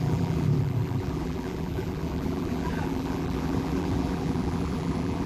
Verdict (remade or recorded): remade